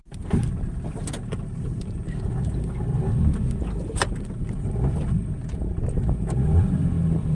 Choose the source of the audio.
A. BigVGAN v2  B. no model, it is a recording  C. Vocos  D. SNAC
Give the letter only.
B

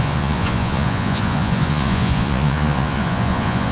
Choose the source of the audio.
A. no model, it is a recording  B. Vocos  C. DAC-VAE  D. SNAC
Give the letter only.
B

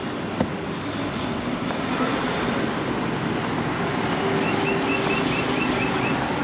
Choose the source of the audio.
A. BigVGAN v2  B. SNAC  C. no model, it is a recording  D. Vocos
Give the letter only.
C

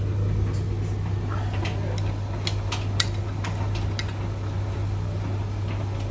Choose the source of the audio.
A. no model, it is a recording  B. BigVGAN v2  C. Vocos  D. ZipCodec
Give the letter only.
A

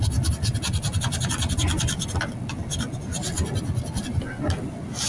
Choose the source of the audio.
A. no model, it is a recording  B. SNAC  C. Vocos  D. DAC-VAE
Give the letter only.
A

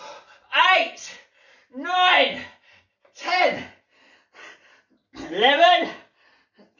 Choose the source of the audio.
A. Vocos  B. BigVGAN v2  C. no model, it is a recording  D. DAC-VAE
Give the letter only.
C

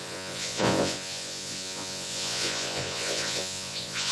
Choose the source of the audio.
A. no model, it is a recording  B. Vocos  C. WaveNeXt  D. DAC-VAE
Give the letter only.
B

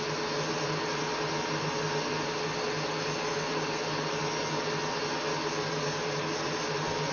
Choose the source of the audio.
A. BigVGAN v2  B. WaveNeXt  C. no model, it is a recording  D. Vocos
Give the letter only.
C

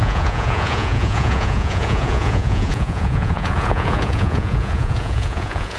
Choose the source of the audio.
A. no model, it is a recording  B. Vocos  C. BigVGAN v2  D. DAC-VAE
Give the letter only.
B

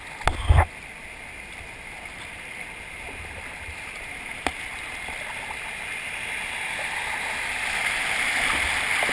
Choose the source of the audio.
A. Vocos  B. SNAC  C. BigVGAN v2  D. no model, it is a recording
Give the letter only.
D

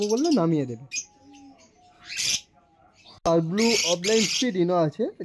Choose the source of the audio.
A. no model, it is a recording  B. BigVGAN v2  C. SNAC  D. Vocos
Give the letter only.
A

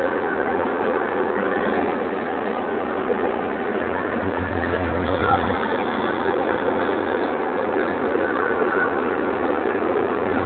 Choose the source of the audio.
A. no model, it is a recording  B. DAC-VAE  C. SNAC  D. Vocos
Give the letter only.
D